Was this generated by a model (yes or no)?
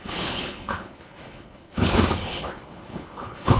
yes